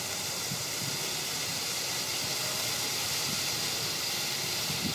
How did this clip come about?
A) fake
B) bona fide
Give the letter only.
A